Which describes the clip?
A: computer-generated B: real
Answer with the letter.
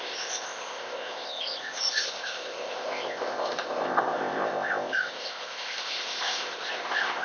A